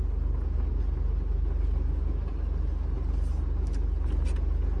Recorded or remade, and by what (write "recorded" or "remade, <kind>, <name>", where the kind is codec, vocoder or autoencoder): recorded